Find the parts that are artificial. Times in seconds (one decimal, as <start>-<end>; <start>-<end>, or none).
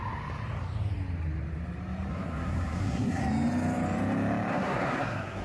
2.1-3.2; 4.5-5.4